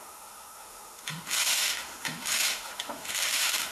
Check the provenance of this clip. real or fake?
fake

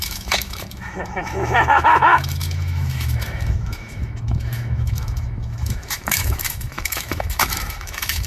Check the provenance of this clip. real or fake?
fake